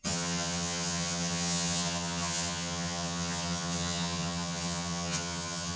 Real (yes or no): no